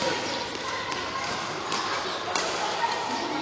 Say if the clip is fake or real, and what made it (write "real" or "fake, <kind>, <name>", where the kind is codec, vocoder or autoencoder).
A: real